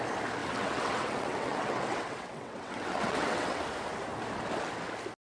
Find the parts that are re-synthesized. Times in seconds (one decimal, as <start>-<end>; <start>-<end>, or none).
0.4-3.6